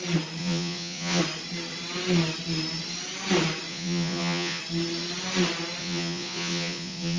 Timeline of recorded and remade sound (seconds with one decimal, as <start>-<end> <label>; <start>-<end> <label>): 0.0-0.4 recorded; 0.4-1.2 remade; 1.2-3.7 recorded; 3.7-4.6 remade; 4.6-5.8 recorded; 5.8-7.2 remade